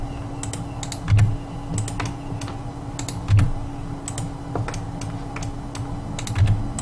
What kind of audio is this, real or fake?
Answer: real